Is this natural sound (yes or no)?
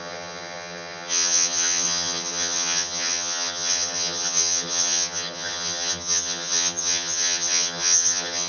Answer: no